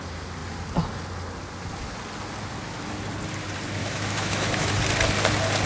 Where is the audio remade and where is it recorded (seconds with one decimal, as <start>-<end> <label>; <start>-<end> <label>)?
0.0-3.8 recorded; 3.8-4.7 remade; 4.7-5.7 recorded